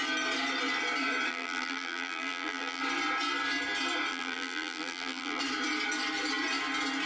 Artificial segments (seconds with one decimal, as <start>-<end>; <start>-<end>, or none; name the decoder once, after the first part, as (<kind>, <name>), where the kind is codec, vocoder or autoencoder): 1.3-2.8 (vocoder, BigVGAN v2); 4.1-5.4